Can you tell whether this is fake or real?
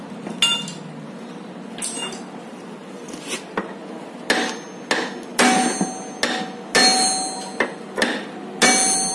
real